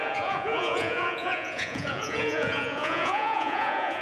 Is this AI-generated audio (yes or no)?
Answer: yes